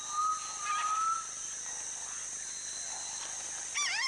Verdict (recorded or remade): recorded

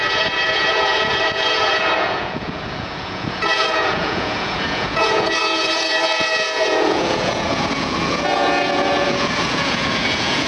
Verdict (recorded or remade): remade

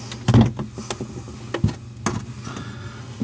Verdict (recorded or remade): recorded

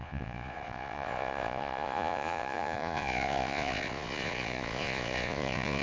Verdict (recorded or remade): remade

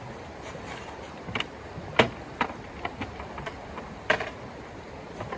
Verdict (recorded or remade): remade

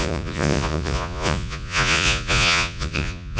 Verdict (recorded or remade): remade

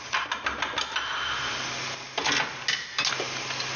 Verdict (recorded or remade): recorded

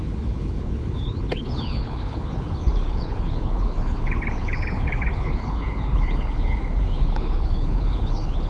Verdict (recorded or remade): remade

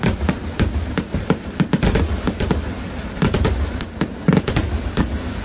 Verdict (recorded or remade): recorded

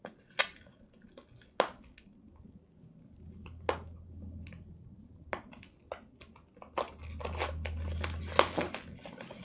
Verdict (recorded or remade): recorded